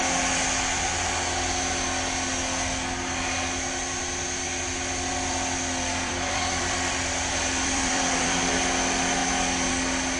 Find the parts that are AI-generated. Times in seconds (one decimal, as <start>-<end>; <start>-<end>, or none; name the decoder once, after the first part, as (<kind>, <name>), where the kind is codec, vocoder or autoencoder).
5.1-8.4 (vocoder, BigVGAN v2)